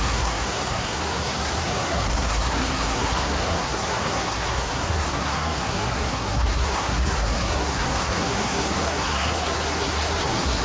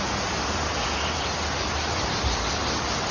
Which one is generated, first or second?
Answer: first